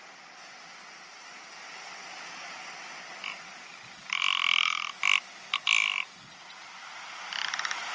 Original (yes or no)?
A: yes